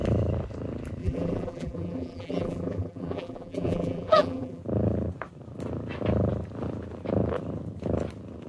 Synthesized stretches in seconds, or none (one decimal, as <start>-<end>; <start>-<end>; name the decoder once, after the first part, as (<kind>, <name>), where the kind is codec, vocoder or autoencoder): 1.0-4.6 (vocoder, BigVGAN v2)